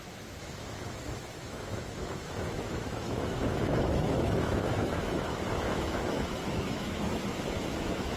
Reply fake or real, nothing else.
fake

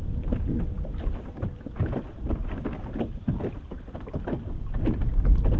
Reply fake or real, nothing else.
real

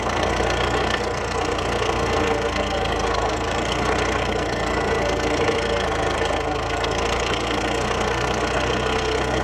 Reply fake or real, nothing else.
fake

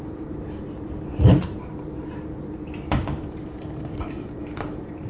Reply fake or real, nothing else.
fake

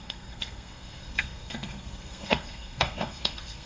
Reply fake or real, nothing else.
fake